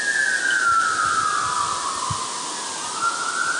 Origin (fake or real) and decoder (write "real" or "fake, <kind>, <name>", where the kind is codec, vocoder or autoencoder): real